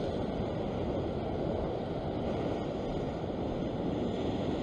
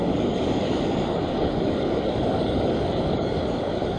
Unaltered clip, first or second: first